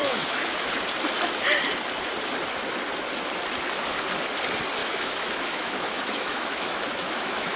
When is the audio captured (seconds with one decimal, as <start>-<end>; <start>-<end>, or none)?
0.7-4.8